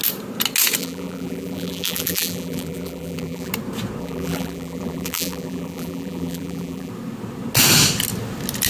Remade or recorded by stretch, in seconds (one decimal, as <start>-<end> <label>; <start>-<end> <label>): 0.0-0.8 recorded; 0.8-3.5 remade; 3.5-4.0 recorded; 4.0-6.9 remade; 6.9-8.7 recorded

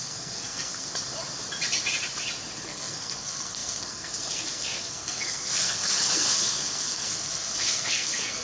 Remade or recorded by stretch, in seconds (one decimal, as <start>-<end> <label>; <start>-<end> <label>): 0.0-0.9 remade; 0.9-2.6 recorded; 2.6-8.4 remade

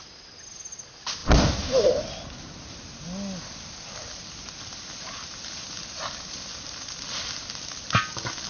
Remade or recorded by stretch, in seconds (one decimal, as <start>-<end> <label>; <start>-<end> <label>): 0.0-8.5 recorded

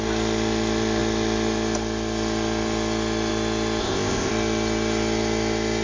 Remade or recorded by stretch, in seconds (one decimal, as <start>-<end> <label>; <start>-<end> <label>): 0.0-3.8 recorded; 3.8-4.3 remade; 4.3-5.8 recorded